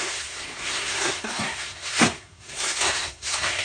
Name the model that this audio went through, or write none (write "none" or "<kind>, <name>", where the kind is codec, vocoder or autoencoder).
codec, SNAC